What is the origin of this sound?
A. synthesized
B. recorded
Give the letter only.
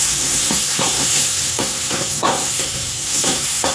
A